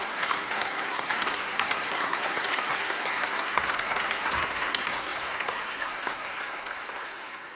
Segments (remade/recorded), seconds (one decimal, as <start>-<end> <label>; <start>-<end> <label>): 0.0-7.6 remade